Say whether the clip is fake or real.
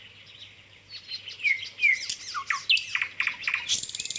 real